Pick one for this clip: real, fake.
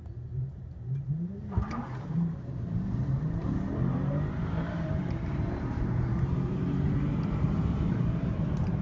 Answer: fake